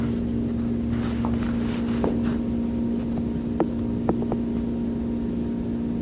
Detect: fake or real real